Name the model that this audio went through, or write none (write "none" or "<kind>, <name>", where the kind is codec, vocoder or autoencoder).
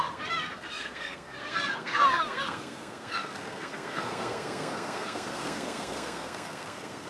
codec, SNAC